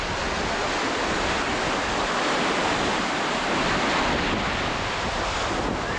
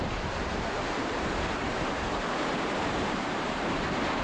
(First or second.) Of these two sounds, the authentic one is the first